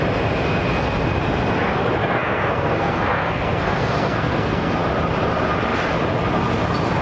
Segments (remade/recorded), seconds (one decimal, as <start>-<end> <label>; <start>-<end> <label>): 0.0-2.0 recorded; 2.0-4.7 remade; 4.7-7.0 recorded